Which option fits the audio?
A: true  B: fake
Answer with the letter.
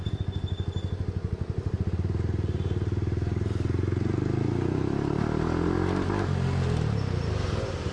A